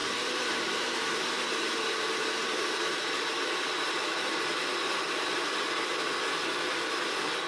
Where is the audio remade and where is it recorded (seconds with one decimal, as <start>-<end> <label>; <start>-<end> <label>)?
0.0-3.6 remade; 3.6-4.8 recorded; 4.8-5.6 remade; 5.6-7.5 recorded